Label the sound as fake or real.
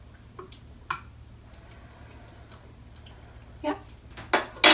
real